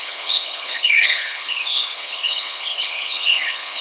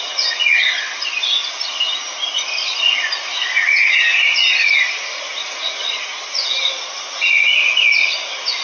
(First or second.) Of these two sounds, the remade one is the first